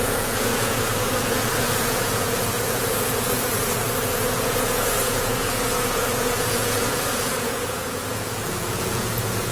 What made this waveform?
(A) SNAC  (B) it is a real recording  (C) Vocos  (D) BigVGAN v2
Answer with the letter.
C